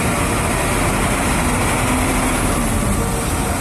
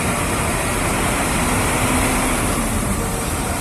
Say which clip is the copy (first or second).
second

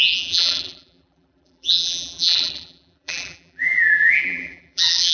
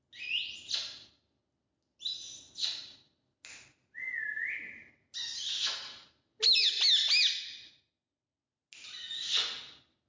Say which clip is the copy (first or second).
first